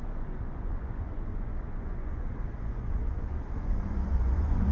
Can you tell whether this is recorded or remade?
remade